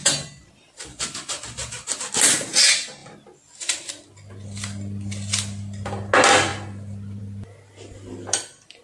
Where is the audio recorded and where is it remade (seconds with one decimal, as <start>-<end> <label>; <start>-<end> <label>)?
0.0-8.8 recorded